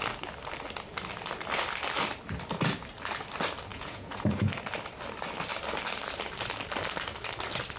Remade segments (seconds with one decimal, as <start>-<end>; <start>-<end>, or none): 3.7-4.5